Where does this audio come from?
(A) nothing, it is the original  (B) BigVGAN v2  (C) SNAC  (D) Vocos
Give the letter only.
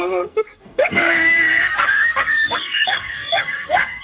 C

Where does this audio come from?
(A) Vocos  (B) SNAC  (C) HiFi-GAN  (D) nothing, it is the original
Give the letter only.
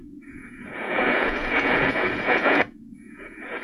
A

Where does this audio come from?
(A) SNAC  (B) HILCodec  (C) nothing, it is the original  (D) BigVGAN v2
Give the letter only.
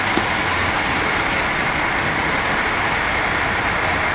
C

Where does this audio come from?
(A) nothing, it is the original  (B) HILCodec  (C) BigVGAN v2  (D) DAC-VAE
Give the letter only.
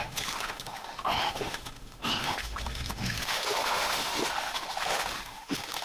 D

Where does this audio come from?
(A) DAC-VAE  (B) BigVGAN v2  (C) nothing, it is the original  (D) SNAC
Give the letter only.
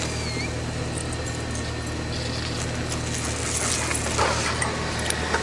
C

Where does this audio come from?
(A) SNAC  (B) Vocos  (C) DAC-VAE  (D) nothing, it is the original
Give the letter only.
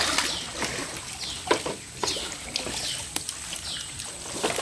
D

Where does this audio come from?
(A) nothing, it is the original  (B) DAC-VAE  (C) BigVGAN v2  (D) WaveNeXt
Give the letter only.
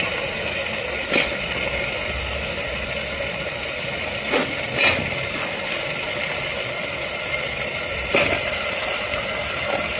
A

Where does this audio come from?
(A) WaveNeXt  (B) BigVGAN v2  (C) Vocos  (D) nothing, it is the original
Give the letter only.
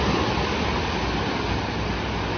D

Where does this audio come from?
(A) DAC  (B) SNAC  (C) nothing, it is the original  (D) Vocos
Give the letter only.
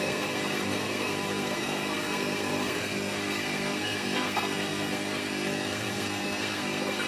B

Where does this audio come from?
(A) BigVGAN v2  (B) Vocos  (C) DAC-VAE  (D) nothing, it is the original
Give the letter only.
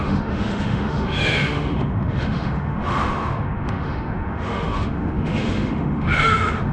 C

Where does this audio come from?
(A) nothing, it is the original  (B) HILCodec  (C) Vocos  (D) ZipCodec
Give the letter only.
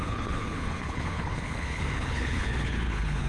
B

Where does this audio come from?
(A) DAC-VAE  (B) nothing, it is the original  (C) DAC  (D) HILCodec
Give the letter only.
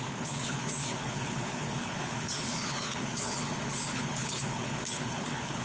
D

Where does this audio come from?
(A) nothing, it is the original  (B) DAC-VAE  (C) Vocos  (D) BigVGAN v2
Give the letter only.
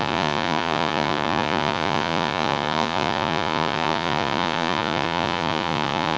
C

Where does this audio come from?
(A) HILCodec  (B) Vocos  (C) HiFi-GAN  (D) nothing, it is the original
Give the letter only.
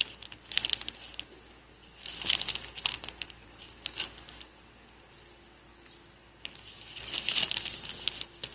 D